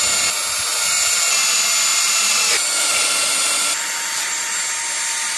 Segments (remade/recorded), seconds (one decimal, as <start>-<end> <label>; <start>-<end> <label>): 0.0-0.7 recorded; 0.7-1.3 remade; 1.3-1.9 recorded; 1.9-4.5 remade; 4.5-5.4 recorded